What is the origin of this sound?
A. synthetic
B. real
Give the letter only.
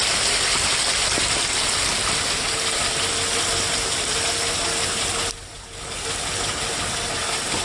B